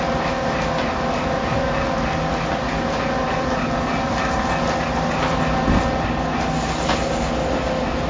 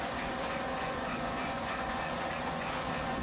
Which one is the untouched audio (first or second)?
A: first